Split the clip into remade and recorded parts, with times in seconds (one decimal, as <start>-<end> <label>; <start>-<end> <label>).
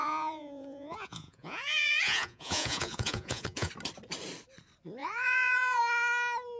0.0-3.7 remade; 3.7-5.0 recorded; 5.0-5.8 remade; 5.8-6.6 recorded